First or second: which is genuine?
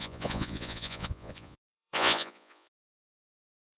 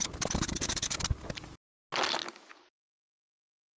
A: second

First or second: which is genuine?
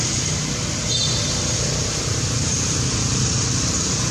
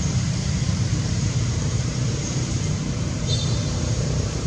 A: first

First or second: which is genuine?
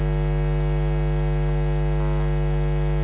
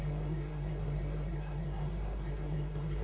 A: first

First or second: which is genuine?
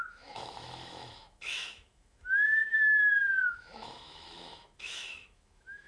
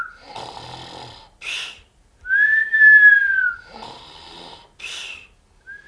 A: second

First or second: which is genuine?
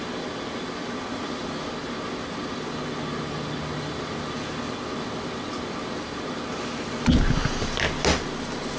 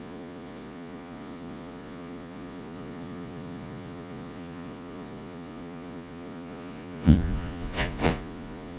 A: first